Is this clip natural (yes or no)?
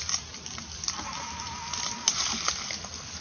yes